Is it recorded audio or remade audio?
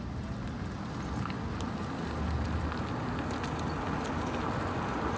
recorded